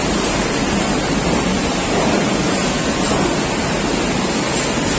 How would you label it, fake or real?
real